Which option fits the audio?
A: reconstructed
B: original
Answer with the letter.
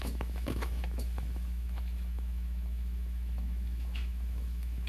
A